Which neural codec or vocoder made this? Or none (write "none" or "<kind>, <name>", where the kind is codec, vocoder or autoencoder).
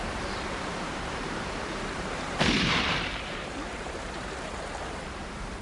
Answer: vocoder, BigVGAN v2